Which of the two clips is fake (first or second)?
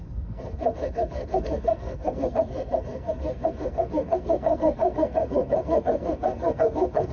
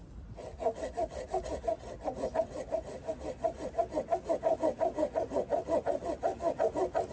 first